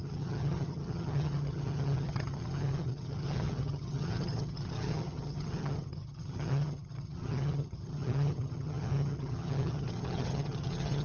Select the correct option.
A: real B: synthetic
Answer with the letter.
B